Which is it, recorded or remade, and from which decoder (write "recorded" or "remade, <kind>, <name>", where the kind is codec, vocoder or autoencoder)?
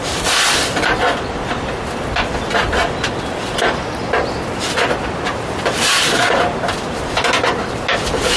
recorded